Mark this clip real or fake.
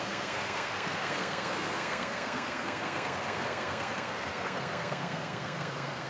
fake